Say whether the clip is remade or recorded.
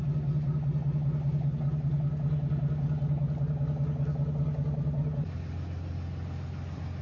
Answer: recorded